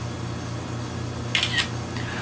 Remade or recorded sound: recorded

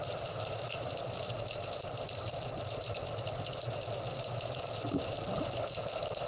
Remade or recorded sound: remade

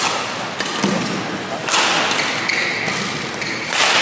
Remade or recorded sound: recorded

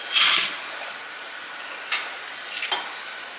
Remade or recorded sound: recorded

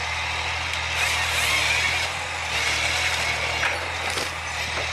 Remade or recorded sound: recorded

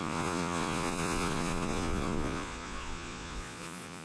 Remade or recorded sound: remade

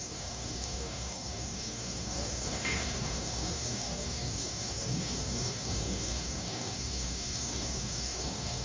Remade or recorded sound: remade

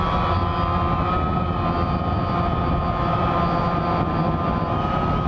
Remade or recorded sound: recorded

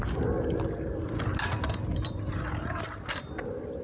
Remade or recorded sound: recorded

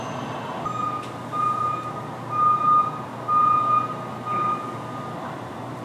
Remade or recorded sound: recorded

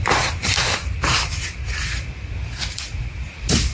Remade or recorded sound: remade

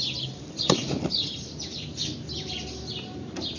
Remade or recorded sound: recorded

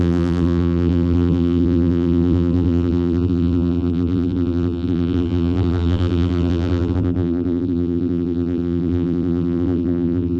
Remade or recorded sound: remade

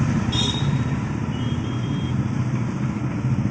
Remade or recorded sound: recorded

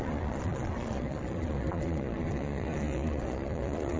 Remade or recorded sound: remade